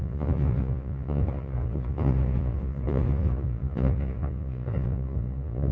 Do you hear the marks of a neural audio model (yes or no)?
yes